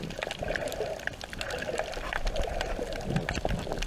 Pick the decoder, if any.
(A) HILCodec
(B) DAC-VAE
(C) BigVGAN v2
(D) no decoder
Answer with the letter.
D